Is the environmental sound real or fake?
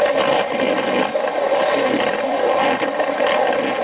real